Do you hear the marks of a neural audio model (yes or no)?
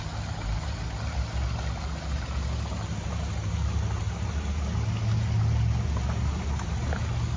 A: no